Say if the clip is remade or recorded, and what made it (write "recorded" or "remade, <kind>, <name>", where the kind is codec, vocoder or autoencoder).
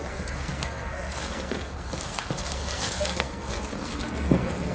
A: remade, codec, SNAC